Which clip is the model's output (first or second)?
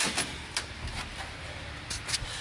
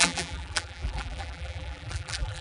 second